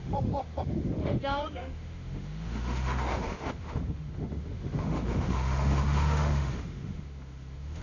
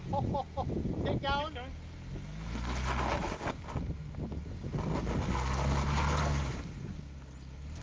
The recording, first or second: second